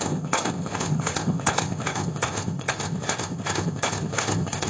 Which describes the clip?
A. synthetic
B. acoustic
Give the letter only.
A